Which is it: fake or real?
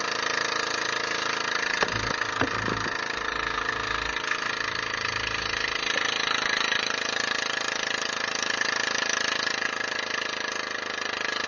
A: real